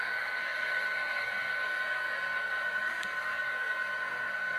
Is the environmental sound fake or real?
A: fake